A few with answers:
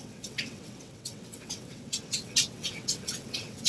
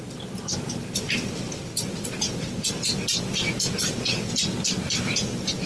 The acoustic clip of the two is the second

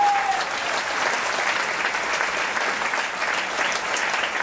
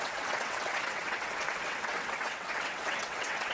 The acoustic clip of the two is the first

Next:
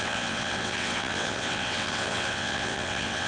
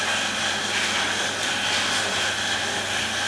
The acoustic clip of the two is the second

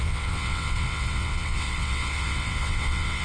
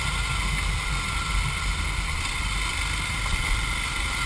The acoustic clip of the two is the second